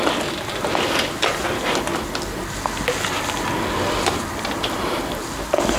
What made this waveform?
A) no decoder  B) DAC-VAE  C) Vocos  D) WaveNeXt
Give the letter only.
A